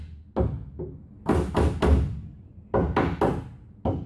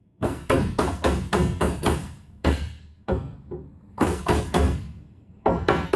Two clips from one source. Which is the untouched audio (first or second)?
first